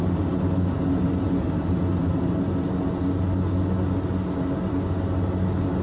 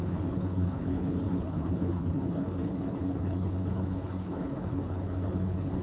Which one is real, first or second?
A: first